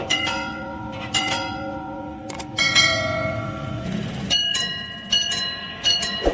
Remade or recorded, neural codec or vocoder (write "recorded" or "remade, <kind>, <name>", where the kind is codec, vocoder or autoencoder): remade, vocoder, Vocos